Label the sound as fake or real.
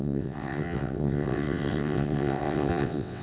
fake